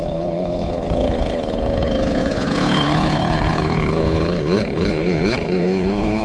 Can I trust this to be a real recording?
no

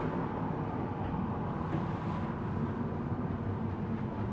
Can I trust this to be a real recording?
yes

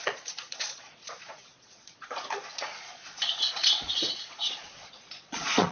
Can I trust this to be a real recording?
no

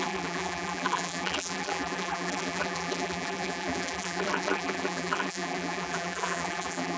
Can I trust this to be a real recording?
no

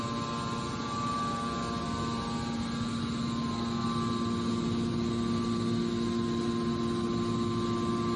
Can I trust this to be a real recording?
yes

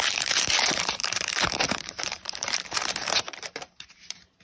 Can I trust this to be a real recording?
no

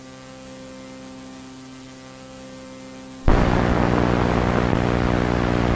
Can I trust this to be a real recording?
yes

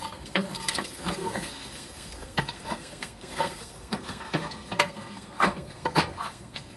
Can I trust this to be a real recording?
no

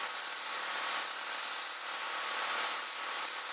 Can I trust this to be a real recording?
yes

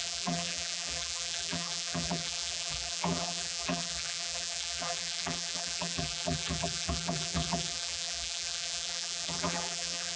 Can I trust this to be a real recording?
no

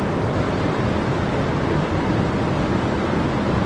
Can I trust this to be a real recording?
no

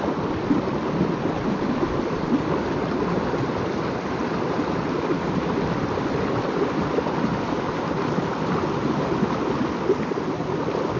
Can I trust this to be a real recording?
yes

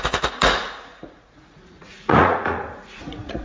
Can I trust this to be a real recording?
no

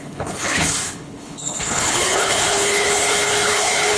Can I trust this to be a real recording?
no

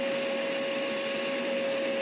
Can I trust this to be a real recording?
yes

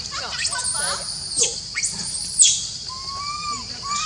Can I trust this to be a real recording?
yes